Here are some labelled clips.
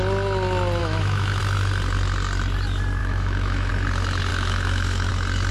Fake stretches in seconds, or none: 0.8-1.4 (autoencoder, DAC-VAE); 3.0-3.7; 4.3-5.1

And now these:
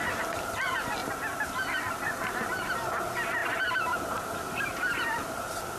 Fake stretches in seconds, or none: 3.4-4.0 (vocoder, BigVGAN v2)

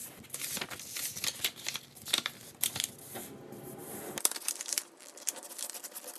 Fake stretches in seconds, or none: 3.8-5.8 (vocoder, BigVGAN v2)

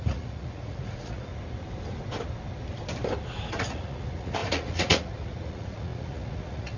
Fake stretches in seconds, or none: 0.0-1.3 (vocoder, Vocos); 3.5-6.8

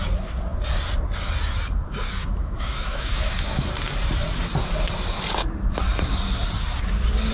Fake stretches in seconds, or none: 2.2-3.7 (autoencoder, DAC-VAE)

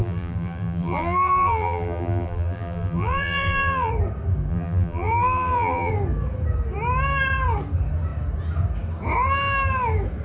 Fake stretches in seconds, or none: 0.0-3.9 (vocoder, BigVGAN v2); 4.5-5.9

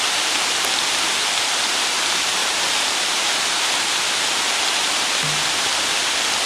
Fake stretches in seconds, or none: none

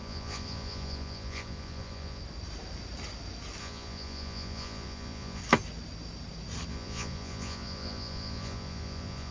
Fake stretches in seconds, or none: 0.0-2.2 (vocoder, Vocos); 3.6-5.4; 6.7-9.3